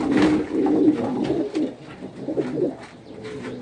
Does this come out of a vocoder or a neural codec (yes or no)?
no